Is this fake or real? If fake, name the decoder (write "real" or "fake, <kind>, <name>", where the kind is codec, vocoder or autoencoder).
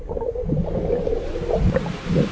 real